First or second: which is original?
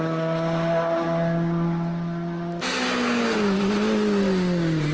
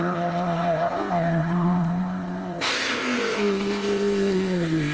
first